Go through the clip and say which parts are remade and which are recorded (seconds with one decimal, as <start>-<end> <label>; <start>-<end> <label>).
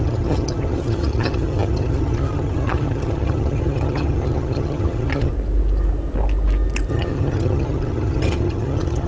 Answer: 0.0-5.3 remade; 5.3-6.9 recorded; 6.9-9.1 remade